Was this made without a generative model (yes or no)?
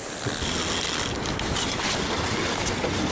yes